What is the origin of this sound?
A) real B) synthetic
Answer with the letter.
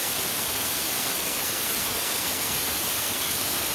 B